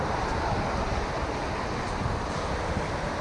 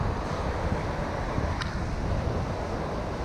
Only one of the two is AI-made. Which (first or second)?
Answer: second